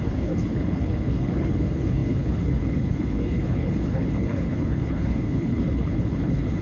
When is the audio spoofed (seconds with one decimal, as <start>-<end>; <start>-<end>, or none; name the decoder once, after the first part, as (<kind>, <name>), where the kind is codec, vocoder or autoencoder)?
0.0-6.6 (codec, HILCodec)